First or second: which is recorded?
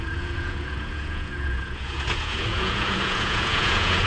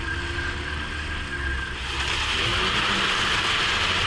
second